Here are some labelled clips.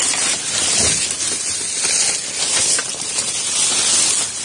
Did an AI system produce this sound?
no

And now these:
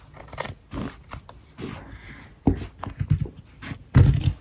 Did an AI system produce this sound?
no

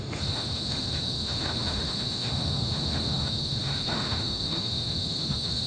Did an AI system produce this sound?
yes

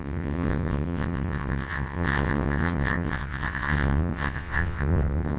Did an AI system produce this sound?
yes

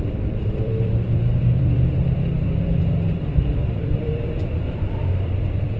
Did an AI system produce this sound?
yes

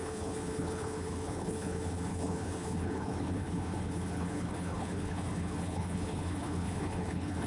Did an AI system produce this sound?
yes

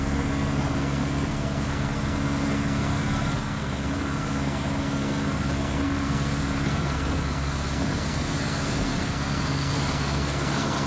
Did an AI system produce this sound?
yes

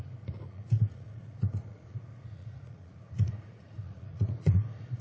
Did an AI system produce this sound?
yes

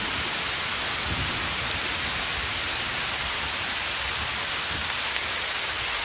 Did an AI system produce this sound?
no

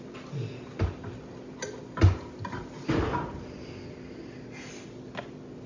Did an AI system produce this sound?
no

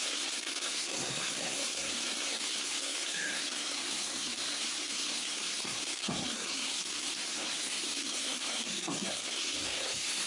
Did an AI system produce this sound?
yes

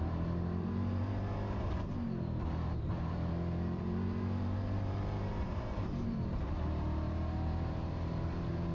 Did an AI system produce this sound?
yes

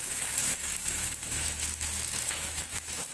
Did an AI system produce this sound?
yes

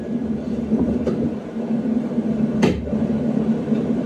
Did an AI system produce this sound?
yes